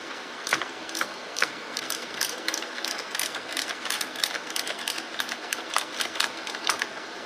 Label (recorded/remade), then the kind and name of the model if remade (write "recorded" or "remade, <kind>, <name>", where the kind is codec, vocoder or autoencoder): remade, codec, SNAC